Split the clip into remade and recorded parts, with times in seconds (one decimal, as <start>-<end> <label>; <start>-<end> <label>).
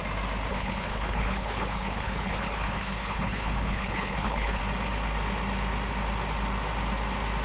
0.0-0.5 recorded; 0.5-4.6 remade; 4.6-7.4 recorded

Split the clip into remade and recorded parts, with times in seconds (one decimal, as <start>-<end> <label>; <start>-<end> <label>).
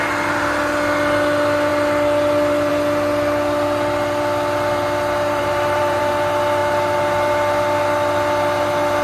0.0-5.4 recorded; 5.4-6.0 remade; 6.0-9.0 recorded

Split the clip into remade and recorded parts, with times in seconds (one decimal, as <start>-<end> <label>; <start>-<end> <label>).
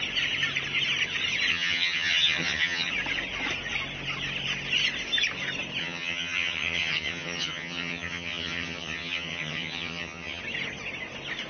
0.0-1.5 recorded; 1.5-2.9 remade; 2.9-5.8 recorded; 5.8-10.4 remade; 10.4-11.5 recorded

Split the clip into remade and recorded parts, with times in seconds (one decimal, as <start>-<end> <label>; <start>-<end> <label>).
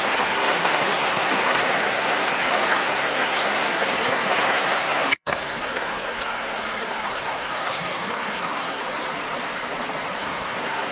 0.0-8.8 remade; 8.8-10.2 recorded; 10.2-10.9 remade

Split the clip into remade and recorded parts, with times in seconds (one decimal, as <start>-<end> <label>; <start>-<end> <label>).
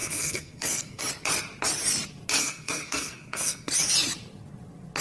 0.0-1.0 remade; 1.0-2.4 recorded; 2.4-3.7 remade; 3.7-5.0 recorded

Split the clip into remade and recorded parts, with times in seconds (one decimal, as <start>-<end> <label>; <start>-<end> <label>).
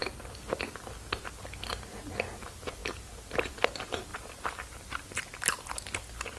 0.0-4.1 recorded; 4.1-5.2 remade; 5.2-6.4 recorded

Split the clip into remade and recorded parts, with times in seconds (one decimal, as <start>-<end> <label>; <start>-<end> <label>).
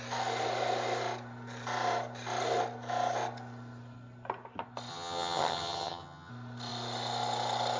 0.0-4.9 recorded; 4.9-6.3 remade; 6.3-7.8 recorded